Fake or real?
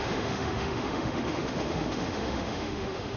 fake